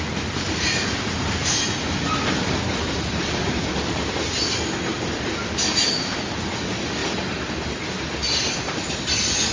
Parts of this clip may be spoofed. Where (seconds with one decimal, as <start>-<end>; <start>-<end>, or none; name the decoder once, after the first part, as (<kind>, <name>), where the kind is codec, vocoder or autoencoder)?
none